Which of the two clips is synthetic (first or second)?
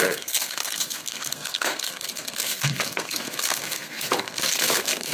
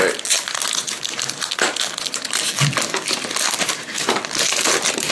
first